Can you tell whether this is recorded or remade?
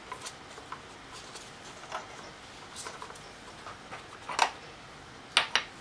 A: recorded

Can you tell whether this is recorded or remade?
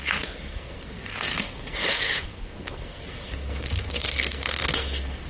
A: remade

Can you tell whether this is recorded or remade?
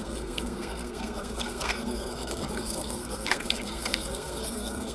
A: remade